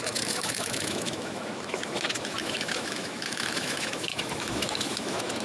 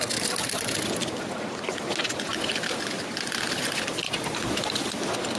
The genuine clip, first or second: second